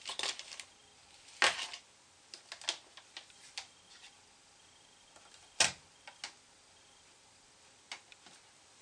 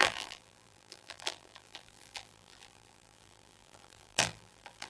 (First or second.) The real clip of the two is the first